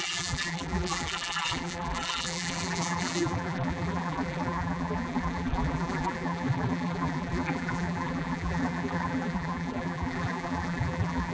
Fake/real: fake